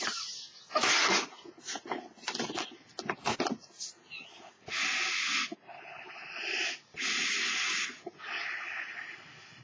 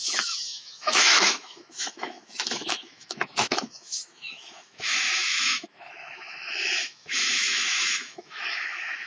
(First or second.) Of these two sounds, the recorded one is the first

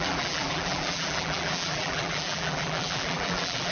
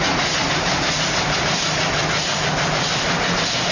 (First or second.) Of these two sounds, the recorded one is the second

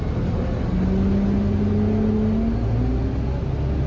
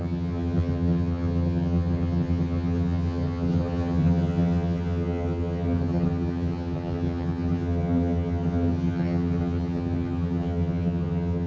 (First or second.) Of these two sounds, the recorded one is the first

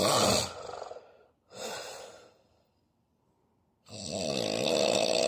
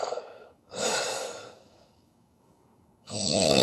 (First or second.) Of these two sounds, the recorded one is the first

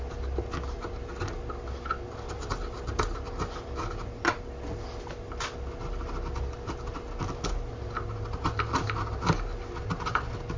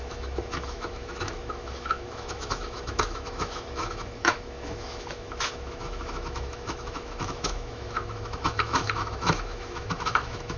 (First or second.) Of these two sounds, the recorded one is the first